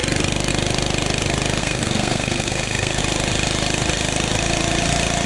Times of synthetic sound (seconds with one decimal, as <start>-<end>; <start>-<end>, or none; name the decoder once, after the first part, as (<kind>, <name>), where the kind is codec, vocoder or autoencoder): 1.6-3.0 (codec, SNAC)